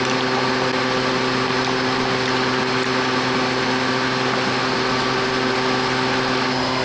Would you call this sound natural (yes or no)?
yes